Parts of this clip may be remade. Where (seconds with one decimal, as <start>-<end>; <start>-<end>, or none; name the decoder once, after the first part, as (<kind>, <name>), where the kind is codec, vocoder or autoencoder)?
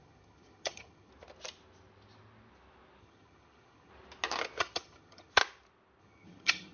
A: 0.0-1.1 (vocoder, HiFi-GAN); 3.0-3.9; 4.6-5.4; 6.0-6.7